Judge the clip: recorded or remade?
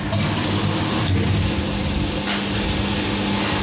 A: recorded